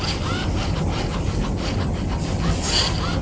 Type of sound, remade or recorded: recorded